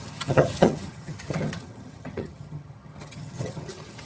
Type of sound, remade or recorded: remade